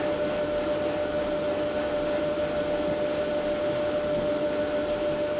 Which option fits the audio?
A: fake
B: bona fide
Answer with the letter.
B